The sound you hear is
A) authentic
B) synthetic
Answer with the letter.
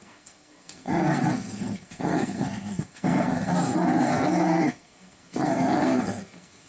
B